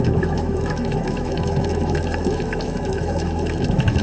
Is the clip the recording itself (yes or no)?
no